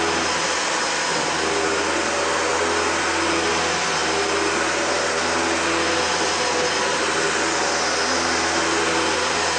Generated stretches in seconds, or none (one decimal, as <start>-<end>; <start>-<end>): none